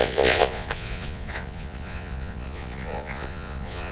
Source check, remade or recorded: remade